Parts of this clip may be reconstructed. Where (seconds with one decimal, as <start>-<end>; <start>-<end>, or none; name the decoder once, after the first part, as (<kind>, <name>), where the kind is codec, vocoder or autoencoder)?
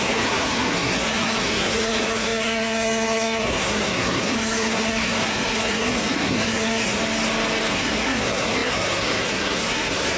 0.0-7.0 (codec, SNAC); 7.7-10.2